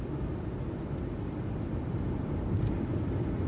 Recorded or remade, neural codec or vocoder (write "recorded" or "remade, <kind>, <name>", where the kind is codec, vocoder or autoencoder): recorded